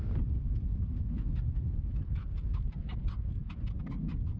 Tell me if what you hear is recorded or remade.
recorded